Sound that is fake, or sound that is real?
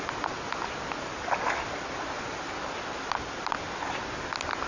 real